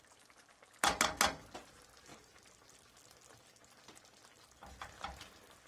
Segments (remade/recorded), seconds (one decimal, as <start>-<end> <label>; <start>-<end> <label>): 0.0-5.7 recorded